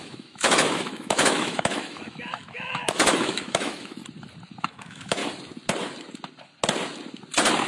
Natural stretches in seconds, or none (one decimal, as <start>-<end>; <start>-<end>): 4.0-4.6; 5.2-7.7